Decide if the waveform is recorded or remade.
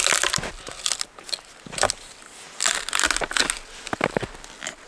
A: recorded